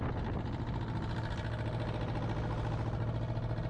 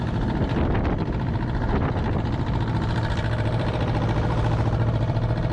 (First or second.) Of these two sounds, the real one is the first